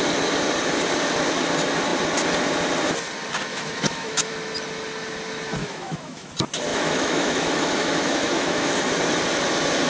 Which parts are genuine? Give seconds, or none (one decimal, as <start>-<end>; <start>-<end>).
0.0-3.5; 4.3-5.6; 6.3-6.7; 8.7-9.9